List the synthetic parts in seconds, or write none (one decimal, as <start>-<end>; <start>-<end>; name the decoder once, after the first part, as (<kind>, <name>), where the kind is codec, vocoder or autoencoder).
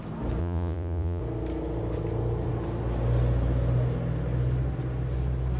0.4-1.2 (vocoder, Vocos)